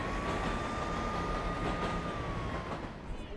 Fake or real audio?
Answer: real